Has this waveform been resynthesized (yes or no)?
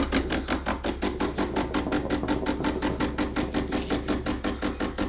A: no